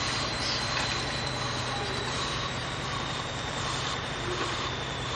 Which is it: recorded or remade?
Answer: remade